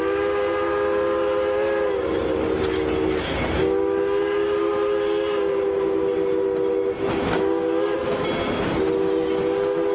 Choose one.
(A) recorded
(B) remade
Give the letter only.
A